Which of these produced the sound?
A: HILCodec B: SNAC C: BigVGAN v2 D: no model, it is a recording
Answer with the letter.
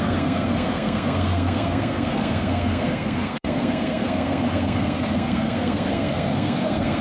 B